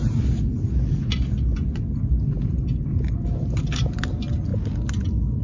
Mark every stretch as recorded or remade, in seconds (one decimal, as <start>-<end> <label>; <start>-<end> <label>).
0.0-5.4 recorded